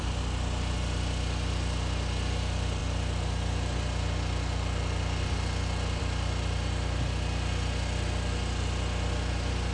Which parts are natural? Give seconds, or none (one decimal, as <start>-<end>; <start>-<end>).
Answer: 0.0-9.7